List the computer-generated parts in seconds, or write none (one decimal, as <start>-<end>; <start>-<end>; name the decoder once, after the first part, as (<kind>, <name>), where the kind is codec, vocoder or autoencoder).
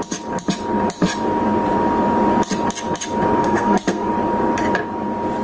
3.4-4.1 (codec, SNAC)